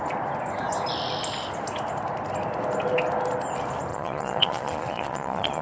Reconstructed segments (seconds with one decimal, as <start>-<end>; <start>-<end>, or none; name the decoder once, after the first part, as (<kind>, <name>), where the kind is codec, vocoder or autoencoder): 3.9-5.6 (vocoder, Vocos)